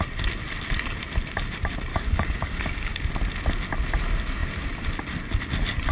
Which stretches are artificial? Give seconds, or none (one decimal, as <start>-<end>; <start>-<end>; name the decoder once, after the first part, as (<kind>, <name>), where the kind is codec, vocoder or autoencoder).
1.9-3.1 (codec, DAC)